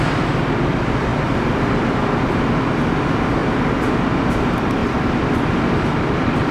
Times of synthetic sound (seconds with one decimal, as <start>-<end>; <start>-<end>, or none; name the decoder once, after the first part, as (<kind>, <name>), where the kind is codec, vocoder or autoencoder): 0.0-3.4 (vocoder, BigVGAN v2); 4.3-6.5